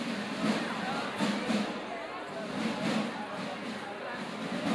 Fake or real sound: real